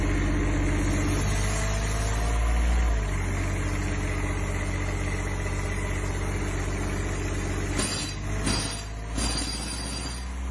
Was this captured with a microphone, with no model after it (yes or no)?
yes